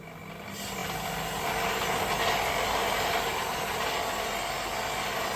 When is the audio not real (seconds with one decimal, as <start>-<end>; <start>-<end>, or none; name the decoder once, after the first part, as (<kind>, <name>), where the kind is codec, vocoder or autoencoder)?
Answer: none